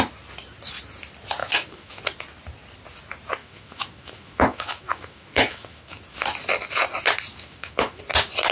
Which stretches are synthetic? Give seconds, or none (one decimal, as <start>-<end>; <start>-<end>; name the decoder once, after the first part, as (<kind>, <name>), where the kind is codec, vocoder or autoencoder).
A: 1.4-2.0 (autoencoder, DAC-VAE); 3.4-6.0; 7.3-8.0